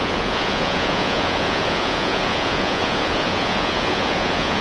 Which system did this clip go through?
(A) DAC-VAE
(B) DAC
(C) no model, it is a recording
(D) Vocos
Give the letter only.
D